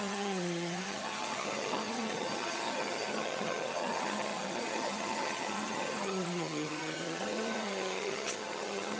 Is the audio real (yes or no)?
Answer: no